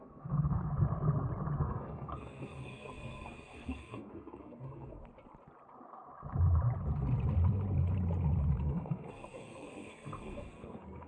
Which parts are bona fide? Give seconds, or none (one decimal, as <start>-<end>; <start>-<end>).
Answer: 0.7-1.6; 5.0-8.6

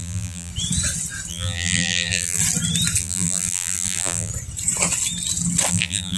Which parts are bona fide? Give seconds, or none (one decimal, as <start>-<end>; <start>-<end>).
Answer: 0.5-1.3; 2.4-3.0; 4.3-5.7

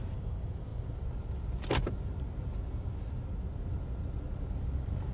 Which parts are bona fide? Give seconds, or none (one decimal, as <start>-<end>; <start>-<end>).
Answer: 0.0-5.1

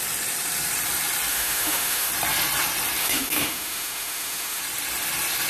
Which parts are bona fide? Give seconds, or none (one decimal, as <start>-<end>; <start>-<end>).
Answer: 0.0-1.3; 2.1-3.0; 4.6-5.5

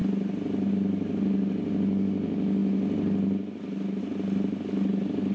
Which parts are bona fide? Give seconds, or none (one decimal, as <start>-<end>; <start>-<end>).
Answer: 0.0-5.3

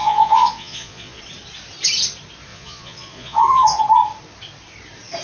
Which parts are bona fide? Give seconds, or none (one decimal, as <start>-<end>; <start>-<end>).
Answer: 1.2-2.5; 3.8-5.2

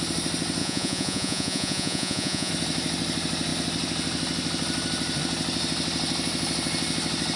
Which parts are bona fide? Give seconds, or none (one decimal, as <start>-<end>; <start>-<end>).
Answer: 0.0-0.6; 2.5-7.4

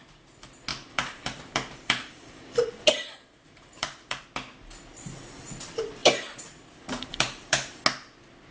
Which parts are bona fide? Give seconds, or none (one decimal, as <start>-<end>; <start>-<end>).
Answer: 0.0-0.7; 4.2-6.0; 7.8-8.5